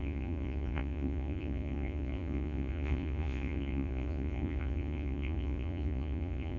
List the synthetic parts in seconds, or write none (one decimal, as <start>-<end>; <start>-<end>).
0.0-6.6